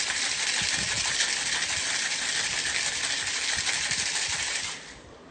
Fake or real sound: real